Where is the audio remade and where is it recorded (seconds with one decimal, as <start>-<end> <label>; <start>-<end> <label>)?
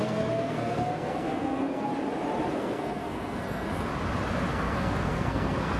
0.0-1.9 remade; 1.9-2.5 recorded; 2.5-3.9 remade; 3.9-4.5 recorded; 4.5-5.8 remade